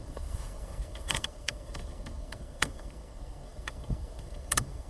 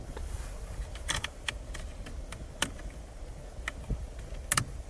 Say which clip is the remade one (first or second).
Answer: first